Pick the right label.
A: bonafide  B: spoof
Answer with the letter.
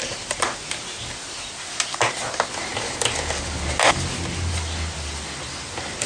A